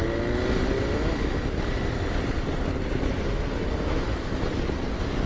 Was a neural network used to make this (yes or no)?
no